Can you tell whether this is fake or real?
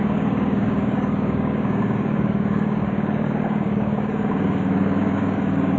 fake